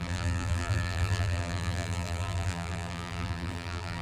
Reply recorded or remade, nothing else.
remade